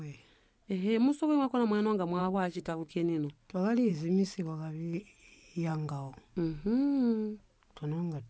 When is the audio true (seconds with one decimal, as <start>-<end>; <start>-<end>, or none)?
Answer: 0.0-2.2; 2.9-8.3